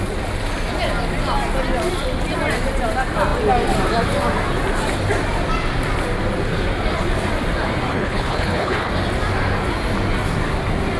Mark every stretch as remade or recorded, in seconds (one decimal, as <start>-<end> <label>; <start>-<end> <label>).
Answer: 0.0-7.9 recorded; 7.9-8.9 remade; 8.9-11.0 recorded